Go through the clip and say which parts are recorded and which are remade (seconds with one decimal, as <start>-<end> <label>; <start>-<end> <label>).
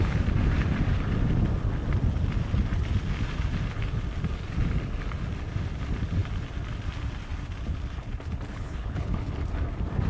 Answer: 0.0-8.5 recorded; 8.5-9.3 remade; 9.3-10.1 recorded